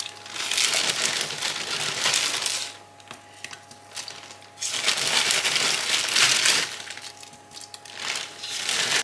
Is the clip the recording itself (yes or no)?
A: yes